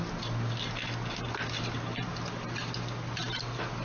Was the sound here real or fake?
real